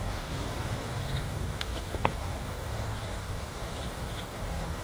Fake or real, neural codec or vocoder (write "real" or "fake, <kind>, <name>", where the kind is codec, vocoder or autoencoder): fake, codec, DAC